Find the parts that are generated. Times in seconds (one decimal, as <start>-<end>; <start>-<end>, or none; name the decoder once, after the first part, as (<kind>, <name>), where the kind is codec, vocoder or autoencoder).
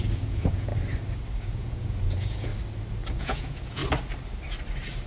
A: 0.0-0.7 (vocoder, Vocos); 1.4-2.5; 3.2-3.8